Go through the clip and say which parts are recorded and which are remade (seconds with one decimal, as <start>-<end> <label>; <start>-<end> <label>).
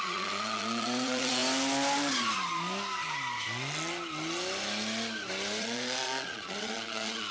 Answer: 0.0-1.4 remade; 1.4-5.6 recorded; 5.6-7.3 remade